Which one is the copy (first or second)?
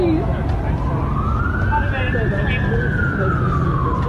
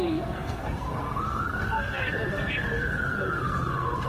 second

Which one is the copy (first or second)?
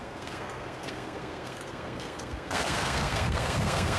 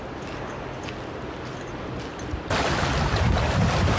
first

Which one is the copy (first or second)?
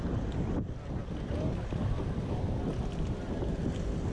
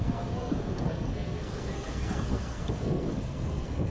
second